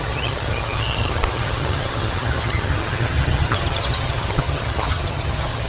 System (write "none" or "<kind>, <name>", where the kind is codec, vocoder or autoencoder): vocoder, HiFi-GAN